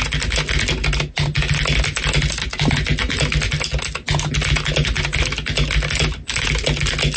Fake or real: real